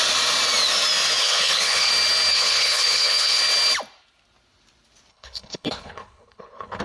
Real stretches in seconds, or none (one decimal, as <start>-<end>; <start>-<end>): 0.0-1.2; 1.9-2.3; 3.4-5.1